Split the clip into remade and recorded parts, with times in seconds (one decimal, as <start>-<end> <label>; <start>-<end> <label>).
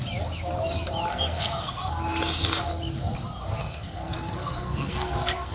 0.0-1.1 recorded; 1.1-1.9 remade; 1.9-3.6 recorded; 3.6-5.5 remade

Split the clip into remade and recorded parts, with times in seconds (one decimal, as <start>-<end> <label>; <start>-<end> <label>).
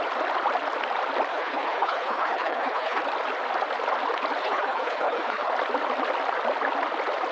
0.0-1.3 recorded; 1.3-3.0 remade; 3.0-4.4 recorded; 4.4-5.5 remade; 5.5-7.3 recorded